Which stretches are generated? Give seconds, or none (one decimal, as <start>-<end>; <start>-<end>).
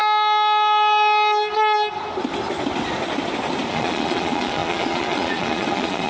3.7-6.1